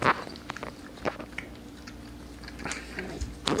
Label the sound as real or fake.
real